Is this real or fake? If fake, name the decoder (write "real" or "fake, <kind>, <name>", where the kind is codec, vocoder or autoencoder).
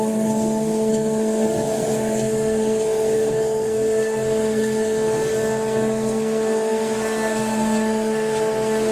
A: fake, codec, SNAC